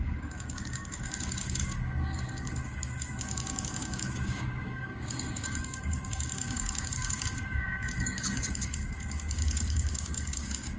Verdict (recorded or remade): remade